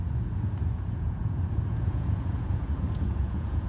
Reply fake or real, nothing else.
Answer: fake